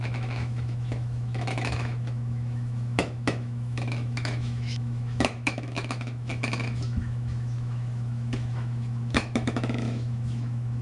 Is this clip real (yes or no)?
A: no